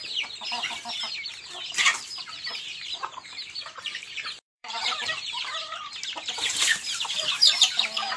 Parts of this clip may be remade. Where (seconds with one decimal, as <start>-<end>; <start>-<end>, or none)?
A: 1.9-5.9; 6.7-8.2